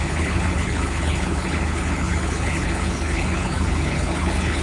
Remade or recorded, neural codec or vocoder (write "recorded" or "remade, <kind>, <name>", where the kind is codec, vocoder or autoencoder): remade, codec, HILCodec